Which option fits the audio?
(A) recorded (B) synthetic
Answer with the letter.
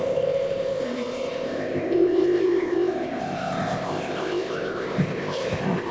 B